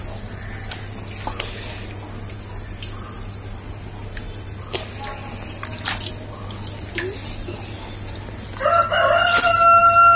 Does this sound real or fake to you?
real